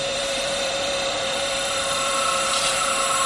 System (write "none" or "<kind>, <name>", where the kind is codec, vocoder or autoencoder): vocoder, BigVGAN v2